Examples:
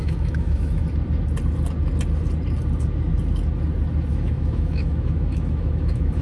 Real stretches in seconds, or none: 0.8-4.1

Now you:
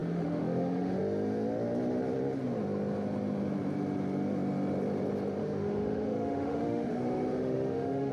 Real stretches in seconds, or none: 1.0-5.4

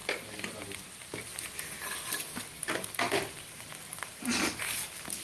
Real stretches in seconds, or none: 0.0-5.2

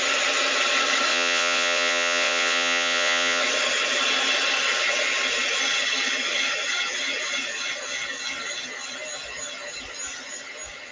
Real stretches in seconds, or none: 0.0-1.1; 3.4-10.9

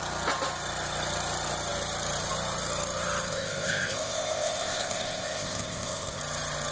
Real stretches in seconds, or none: 0.0-3.3; 6.2-6.7